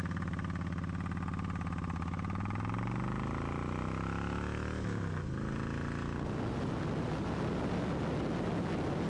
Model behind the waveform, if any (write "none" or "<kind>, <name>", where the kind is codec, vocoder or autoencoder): none